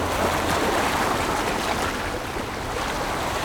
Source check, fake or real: real